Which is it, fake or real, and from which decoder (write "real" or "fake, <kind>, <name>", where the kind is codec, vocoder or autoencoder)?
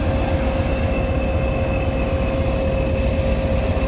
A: real